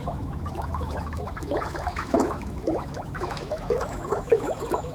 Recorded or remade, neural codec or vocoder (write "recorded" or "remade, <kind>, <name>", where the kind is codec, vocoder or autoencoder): remade, autoencoder, DAC-VAE